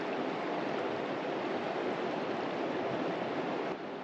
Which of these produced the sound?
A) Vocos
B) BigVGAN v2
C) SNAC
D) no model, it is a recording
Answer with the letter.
D